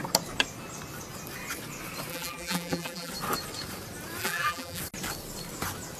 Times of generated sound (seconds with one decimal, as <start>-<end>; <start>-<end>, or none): 2.1-3.1; 4.2-4.8